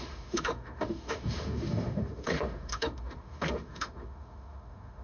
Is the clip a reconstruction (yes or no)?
yes